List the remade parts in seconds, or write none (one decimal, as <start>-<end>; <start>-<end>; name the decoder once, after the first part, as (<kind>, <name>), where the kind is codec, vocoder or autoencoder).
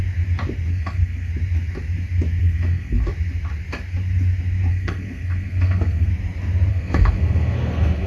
0.7-1.3 (codec, SNAC); 2.4-3.0; 4.7-6.1; 6.7-8.1